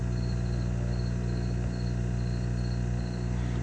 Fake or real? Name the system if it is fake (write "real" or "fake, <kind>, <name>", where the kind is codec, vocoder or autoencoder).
real